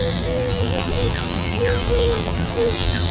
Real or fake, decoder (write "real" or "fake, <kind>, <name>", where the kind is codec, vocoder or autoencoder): fake, vocoder, BigVGAN v2